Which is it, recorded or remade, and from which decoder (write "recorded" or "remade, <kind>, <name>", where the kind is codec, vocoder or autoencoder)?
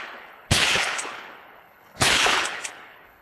remade, codec, HILCodec